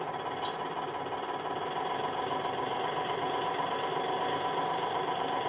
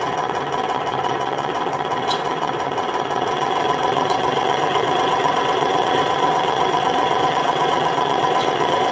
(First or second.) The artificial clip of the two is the second